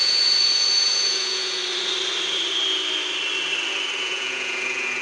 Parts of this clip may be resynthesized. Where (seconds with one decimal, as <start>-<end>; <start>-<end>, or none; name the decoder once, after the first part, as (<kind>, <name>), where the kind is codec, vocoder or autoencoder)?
0.0-1.6 (vocoder, Vocos); 4.0-5.0